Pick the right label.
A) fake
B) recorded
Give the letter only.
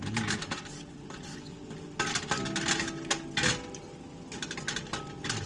B